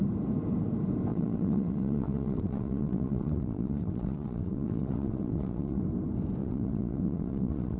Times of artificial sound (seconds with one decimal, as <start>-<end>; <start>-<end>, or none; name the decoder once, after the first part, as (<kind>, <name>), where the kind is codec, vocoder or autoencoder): 1.1-5.8 (vocoder, WaveNeXt); 6.4-7.8